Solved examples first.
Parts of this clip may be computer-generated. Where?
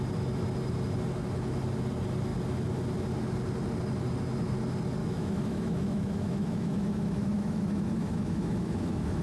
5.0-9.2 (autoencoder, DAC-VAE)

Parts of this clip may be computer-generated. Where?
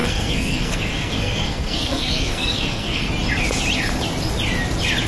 0.0-3.1 (codec, SNAC)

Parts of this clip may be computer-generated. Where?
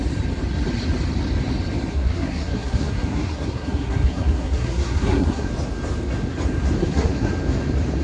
1.9-5.5 (codec, SNAC); 6.8-7.3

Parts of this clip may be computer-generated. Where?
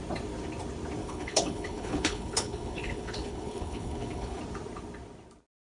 1.0-4.4 (codec, HILCodec)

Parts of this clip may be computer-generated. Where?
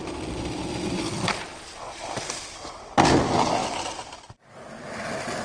3.6-4.2 (vocoder, BigVGAN v2)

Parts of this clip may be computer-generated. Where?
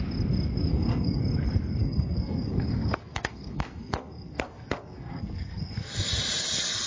0.7-1.2 (codec, SNAC); 1.8-5.7